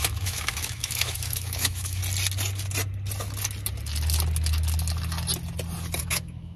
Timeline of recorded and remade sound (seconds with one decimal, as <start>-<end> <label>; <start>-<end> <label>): 0.0-2.0 remade; 2.0-6.0 recorded; 6.0-6.6 remade